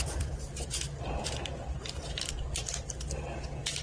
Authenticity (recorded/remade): recorded